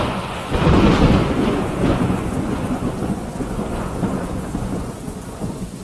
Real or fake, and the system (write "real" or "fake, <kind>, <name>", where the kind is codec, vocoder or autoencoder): fake, vocoder, Vocos